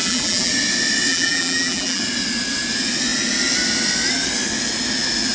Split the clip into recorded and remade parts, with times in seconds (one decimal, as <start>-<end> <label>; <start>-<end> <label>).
0.0-0.5 remade; 0.5-1.1 recorded; 1.1-2.0 remade; 2.0-5.3 recorded